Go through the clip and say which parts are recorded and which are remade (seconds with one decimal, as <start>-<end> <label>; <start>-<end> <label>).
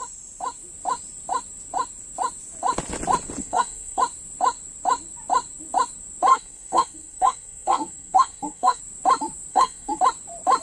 0.0-3.4 recorded; 3.4-4.0 remade; 4.0-6.3 recorded; 6.3-8.8 remade; 8.8-9.5 recorded; 9.5-10.0 remade; 10.0-10.6 recorded